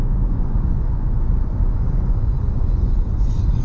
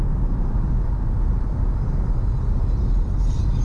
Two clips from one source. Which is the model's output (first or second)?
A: first